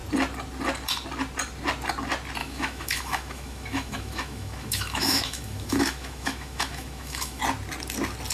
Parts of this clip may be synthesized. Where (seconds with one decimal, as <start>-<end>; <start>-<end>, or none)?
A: 2.4-7.4